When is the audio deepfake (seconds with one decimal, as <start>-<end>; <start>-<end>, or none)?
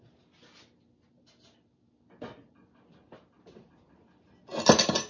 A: none